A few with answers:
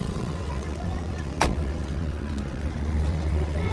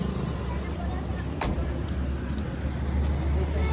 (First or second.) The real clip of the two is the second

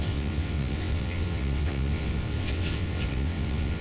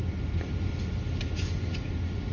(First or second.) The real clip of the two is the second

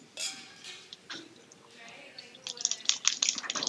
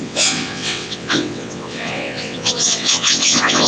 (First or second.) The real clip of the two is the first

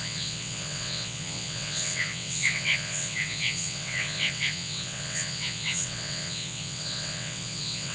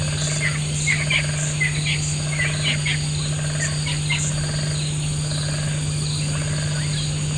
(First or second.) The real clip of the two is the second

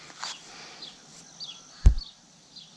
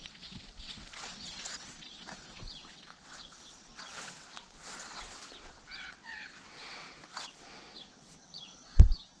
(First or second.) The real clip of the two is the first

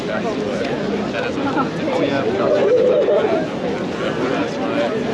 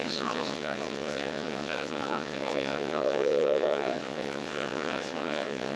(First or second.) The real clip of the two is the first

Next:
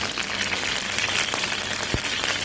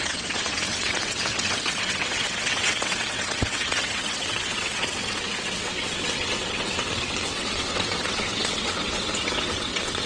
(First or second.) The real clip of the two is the first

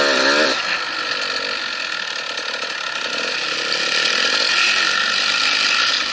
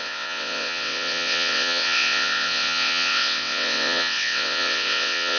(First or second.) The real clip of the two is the first